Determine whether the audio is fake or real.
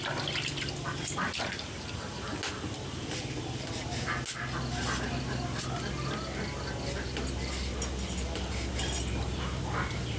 real